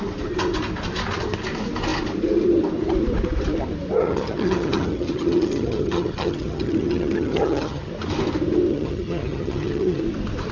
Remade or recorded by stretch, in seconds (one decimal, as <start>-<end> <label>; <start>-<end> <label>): 0.0-4.0 recorded; 4.0-7.9 remade; 7.9-8.7 recorded; 8.7-10.0 remade; 10.0-10.5 recorded